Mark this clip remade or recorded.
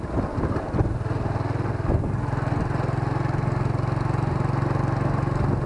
recorded